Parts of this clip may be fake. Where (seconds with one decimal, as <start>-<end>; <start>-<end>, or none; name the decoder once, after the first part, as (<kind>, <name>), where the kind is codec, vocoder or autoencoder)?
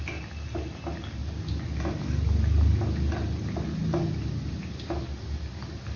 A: none